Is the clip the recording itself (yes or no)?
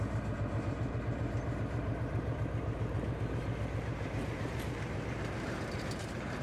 no